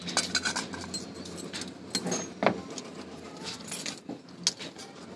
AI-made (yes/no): no